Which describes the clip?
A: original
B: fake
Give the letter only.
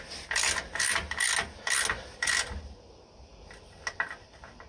A